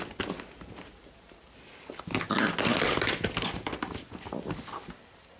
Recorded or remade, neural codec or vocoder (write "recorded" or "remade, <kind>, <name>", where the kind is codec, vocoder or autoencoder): recorded